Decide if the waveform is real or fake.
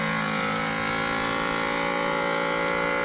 fake